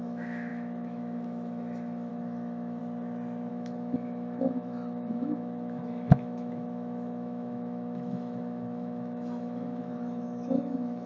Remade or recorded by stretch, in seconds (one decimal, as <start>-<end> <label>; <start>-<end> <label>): 0.0-2.8 remade; 2.8-3.5 recorded; 3.5-11.1 remade